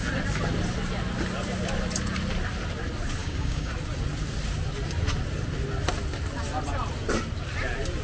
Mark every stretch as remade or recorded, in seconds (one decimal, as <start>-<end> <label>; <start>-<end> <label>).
0.0-3.2 recorded; 3.2-3.7 remade; 3.7-8.0 recorded